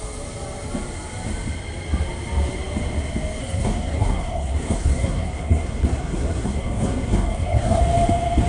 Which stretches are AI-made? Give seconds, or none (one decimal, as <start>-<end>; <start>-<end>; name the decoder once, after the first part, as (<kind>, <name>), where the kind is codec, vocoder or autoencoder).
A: 3.4-7.8 (codec, SNAC)